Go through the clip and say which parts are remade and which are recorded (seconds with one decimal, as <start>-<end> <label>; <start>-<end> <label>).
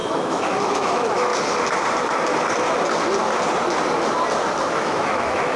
0.0-1.3 remade; 1.3-4.7 recorded; 4.7-5.6 remade